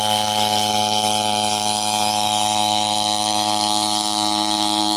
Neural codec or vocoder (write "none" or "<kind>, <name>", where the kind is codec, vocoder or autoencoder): autoencoder, DAC-VAE